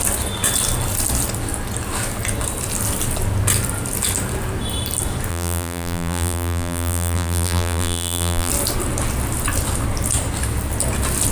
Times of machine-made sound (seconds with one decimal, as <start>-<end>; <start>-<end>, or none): 5.3-8.5